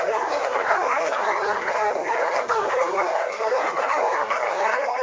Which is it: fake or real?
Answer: fake